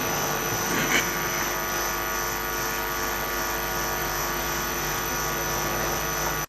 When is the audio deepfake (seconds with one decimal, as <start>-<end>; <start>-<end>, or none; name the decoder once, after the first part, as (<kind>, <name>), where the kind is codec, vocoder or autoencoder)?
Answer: 4.0-5.1 (vocoder, Vocos)